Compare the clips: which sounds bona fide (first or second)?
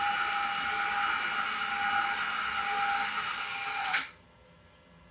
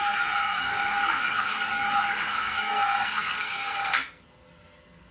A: first